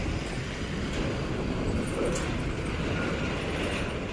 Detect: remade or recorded recorded